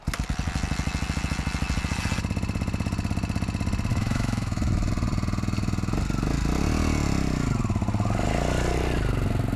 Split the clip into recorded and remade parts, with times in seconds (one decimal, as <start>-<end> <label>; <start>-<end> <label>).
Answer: 0.0-3.9 recorded; 3.9-4.9 remade; 4.9-9.6 recorded